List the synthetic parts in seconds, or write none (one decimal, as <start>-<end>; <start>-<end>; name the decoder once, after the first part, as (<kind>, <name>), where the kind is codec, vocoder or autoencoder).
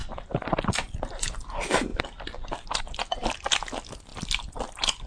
0.0-0.6 (vocoder, BigVGAN v2); 1.9-2.8; 4.1-5.1